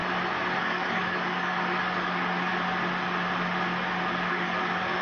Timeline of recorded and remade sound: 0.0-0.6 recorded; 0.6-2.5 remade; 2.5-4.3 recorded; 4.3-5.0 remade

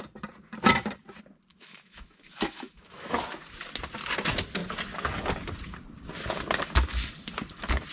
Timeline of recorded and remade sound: 0.0-1.5 recorded; 1.5-3.2 remade; 3.2-7.9 recorded

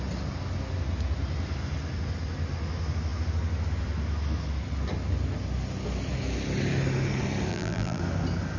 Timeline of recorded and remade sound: 0.0-7.5 recorded; 7.5-8.0 remade; 8.0-8.6 recorded

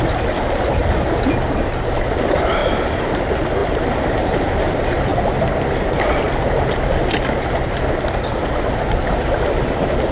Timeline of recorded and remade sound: 0.0-2.6 recorded; 2.6-3.2 remade; 3.2-3.6 recorded; 3.6-4.5 remade; 4.5-10.1 recorded

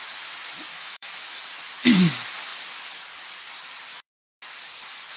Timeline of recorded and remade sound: 0.0-0.7 recorded; 0.7-1.5 remade; 1.5-5.2 recorded